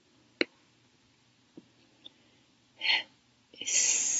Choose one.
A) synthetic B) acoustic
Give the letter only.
B